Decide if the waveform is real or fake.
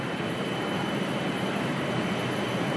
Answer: fake